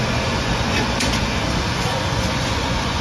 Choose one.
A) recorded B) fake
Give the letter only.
B